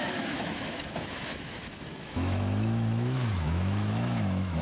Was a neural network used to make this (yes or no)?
yes